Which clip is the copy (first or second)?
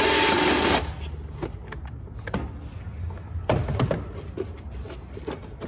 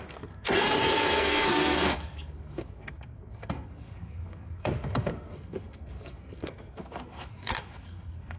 second